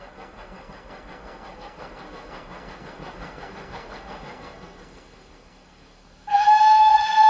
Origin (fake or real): fake